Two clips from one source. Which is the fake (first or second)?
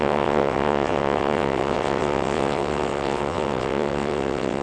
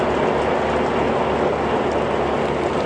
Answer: first